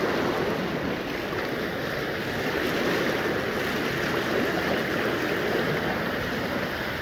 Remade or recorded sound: recorded